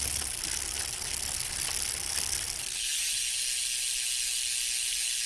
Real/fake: real